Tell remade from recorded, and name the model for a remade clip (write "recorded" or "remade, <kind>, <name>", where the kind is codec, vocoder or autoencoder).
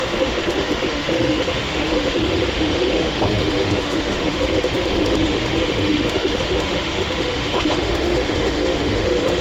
remade, autoencoder, DAC-VAE